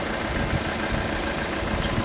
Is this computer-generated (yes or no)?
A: no